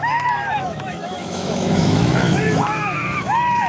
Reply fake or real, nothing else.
fake